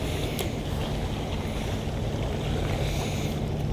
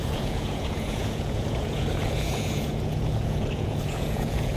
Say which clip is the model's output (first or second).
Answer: second